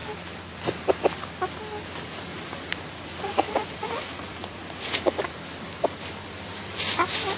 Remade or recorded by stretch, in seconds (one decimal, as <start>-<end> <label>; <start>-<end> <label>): 0.0-2.3 recorded; 2.3-5.2 remade; 5.2-7.4 recorded